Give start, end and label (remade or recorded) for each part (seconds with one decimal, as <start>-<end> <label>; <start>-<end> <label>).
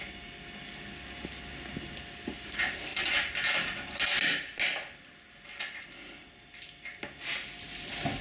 0.0-8.2 recorded